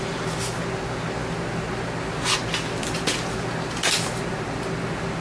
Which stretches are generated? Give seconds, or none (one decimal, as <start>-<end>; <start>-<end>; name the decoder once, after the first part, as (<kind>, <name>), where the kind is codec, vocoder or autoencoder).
none